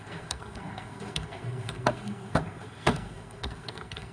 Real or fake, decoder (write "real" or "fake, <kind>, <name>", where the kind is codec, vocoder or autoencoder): fake, codec, SNAC